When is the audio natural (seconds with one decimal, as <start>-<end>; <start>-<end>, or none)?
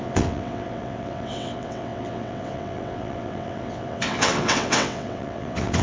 none